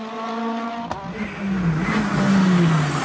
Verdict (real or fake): real